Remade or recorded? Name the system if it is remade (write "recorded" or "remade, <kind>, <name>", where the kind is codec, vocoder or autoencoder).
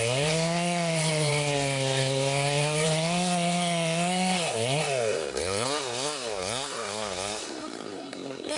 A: remade, codec, SNAC